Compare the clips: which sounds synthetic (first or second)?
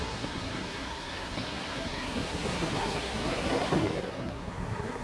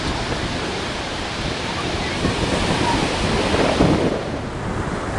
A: first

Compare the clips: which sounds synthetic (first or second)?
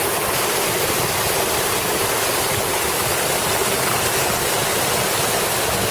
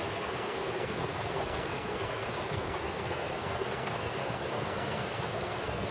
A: second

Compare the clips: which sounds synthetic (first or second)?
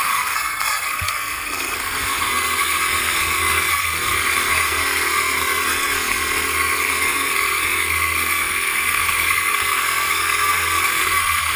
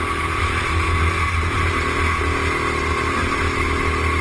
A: first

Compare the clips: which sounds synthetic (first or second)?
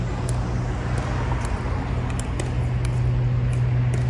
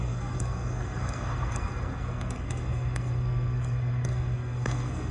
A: second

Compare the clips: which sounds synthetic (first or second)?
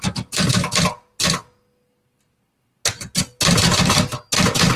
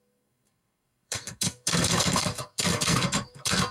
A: second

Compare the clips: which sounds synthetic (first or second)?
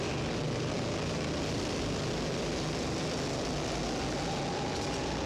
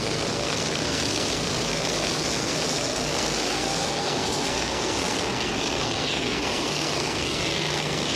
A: second